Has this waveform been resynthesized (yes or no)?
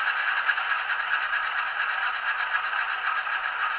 no